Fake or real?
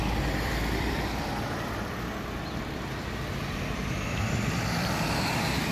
fake